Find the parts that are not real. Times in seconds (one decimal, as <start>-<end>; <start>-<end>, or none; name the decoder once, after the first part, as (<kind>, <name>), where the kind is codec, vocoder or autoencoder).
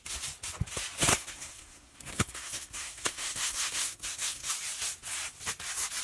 1.1-4.5 (codec, SNAC)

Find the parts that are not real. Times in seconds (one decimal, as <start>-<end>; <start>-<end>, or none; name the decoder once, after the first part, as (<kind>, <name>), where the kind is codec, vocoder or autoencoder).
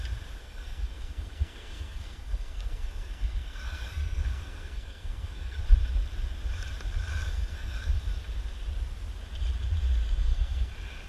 0.4-5.6 (codec, SNAC); 7.1-7.9; 10.2-10.7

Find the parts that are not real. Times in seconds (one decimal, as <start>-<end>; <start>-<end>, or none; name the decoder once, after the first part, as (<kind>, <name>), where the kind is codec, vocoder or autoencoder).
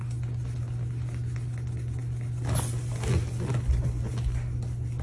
none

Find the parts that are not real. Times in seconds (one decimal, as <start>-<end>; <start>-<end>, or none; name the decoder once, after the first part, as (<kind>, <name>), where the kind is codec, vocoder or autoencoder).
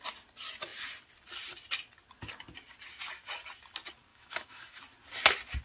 4.1-4.8 (autoencoder, DAC-VAE)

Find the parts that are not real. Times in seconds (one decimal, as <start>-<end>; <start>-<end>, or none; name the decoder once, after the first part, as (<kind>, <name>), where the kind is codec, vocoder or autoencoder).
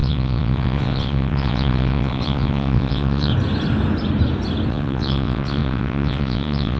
0.0-3.3 (vocoder, WaveNeXt); 4.7-6.8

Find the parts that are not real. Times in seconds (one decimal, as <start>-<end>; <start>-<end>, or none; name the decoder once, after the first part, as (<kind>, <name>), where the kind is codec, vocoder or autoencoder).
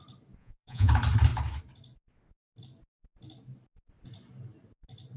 0.4-0.9 (vocoder, Vocos)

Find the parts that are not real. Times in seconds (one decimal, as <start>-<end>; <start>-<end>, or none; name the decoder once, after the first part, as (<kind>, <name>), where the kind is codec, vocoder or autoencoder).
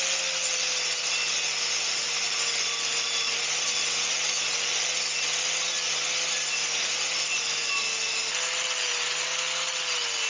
none